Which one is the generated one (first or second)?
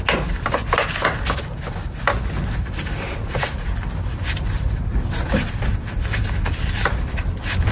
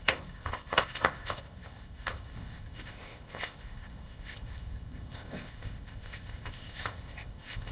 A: second